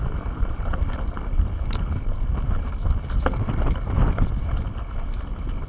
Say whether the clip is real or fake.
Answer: real